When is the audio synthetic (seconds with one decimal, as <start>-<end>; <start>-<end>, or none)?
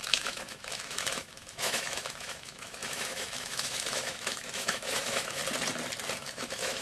0.0-5.4; 6.2-6.8